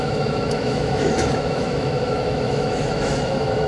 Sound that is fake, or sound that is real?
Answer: fake